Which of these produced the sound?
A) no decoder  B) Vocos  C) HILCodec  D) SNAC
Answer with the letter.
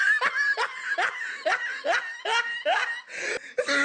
A